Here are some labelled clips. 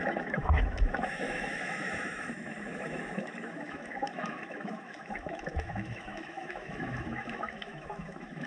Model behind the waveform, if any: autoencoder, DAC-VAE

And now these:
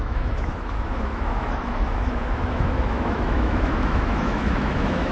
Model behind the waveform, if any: autoencoder, DAC-VAE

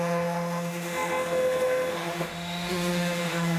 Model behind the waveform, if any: autoencoder, DAC-VAE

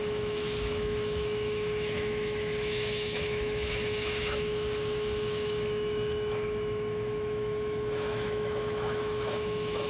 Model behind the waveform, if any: autoencoder, DAC-VAE